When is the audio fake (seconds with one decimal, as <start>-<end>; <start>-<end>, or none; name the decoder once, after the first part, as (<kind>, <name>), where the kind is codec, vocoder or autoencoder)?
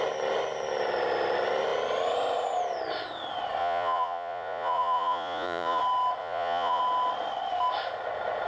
3.6-5.8 (vocoder, Vocos); 6.2-6.8